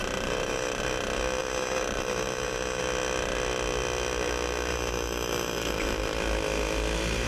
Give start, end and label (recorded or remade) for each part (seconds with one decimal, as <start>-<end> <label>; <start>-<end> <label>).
0.0-0.8 remade; 0.8-1.4 recorded; 1.4-2.8 remade; 2.8-4.7 recorded; 4.7-6.2 remade; 6.2-7.3 recorded